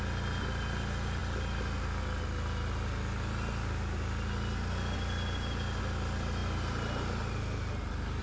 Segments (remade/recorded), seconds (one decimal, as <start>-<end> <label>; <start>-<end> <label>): 0.0-8.2 recorded